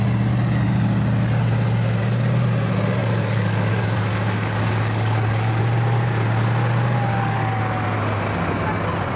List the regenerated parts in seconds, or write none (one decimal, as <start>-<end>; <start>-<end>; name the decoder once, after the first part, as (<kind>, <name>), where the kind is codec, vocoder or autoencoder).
3.0-5.6 (codec, DAC); 7.1-7.6